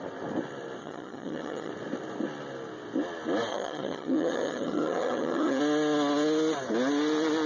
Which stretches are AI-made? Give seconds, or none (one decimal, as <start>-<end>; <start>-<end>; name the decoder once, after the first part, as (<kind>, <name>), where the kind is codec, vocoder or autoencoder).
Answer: 0.8-1.7 (vocoder, HiFi-GAN); 3.5-5.6